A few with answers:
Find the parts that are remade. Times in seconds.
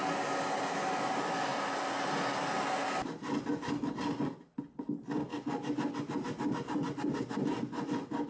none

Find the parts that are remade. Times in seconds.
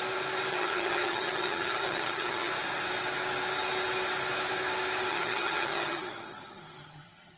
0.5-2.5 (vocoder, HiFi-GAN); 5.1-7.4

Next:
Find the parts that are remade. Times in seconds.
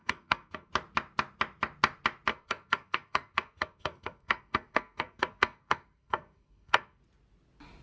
0.0-0.7 (codec, SNAC); 2.3-7.0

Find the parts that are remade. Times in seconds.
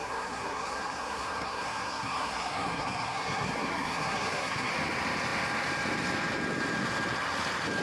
0.0-4.7 (codec, SNAC)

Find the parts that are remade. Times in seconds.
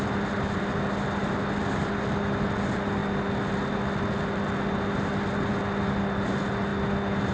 none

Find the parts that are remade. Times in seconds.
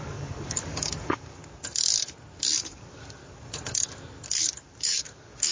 0.0-1.4 (codec, DAC); 2.6-3.2; 4.4-5.5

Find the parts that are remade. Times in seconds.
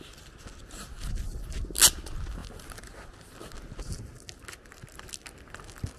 none